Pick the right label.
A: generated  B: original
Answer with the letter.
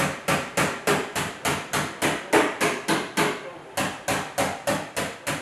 B